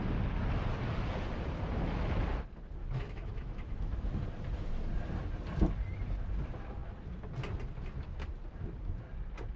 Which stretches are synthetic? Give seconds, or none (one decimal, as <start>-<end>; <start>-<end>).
2.8-4.1